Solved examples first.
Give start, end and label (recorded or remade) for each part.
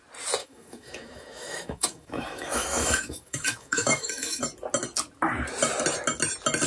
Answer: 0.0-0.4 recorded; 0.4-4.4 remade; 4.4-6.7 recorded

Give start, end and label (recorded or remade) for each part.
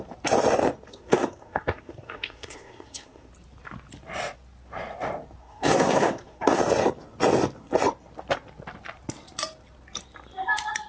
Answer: 0.0-0.9 recorded; 0.9-3.3 remade; 3.3-5.4 recorded; 5.4-6.6 remade; 6.6-10.9 recorded